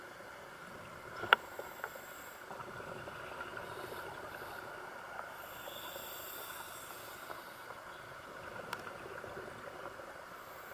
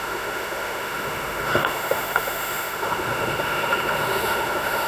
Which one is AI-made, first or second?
second